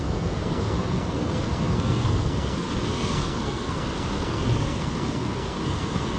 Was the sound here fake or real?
fake